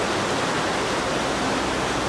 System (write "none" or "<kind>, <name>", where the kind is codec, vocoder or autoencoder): none